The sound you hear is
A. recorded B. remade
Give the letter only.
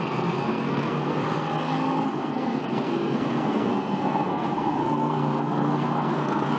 B